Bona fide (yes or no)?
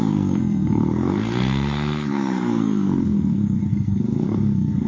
no